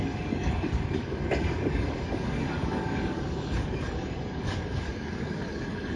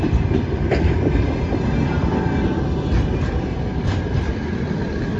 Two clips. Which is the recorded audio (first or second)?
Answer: second